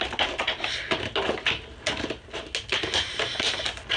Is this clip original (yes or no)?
yes